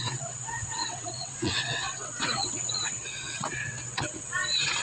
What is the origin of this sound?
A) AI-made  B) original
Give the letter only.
A